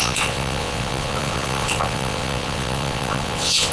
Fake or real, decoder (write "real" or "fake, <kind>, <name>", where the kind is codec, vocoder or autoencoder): fake, vocoder, WaveNeXt